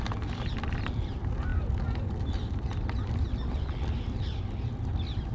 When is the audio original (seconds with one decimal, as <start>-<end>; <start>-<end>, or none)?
0.0-1.5; 4.7-5.3